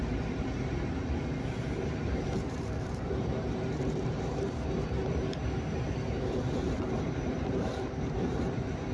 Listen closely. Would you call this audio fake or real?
fake